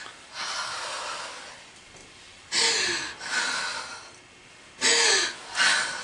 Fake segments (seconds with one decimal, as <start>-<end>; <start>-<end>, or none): none